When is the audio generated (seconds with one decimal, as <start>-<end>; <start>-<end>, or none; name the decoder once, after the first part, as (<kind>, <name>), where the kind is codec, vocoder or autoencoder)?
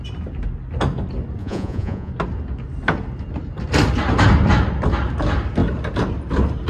1.4-2.1 (vocoder, Vocos)